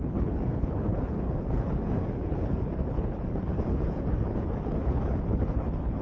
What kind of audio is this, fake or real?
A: fake